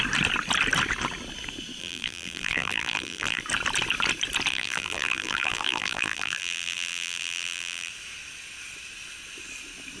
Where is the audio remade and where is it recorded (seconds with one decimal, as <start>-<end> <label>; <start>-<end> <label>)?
0.0-1.8 recorded; 1.8-3.4 remade; 3.4-4.5 recorded; 4.5-7.9 remade; 7.9-10.0 recorded